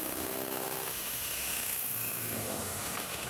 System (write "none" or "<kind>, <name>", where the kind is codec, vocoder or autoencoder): autoencoder, DAC-VAE